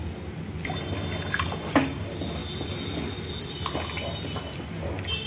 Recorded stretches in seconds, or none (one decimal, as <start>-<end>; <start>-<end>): 0.0-5.3